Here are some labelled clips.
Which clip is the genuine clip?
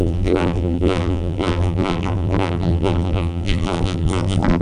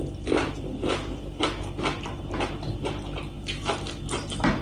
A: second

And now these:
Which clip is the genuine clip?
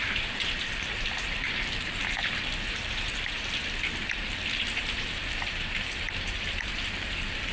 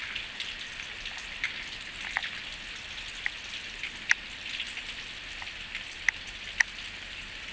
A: second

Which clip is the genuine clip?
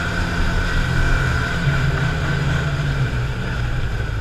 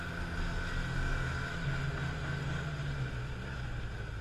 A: second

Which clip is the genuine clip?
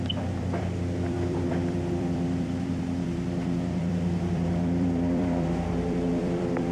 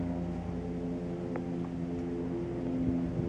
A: second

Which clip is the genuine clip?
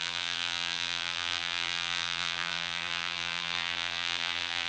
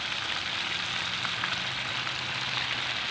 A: second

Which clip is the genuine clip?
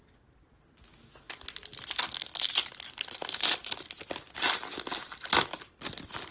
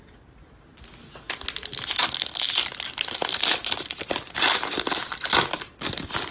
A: first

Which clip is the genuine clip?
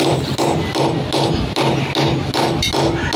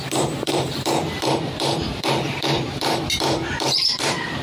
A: first